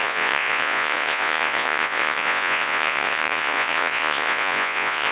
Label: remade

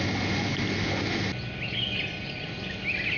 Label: recorded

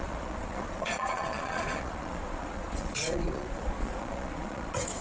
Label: remade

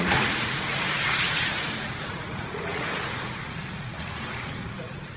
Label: remade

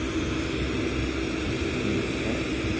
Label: recorded